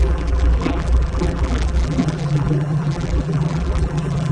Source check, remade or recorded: remade